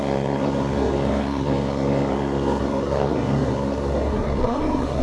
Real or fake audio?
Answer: fake